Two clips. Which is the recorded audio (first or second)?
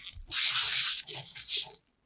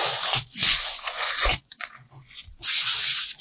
first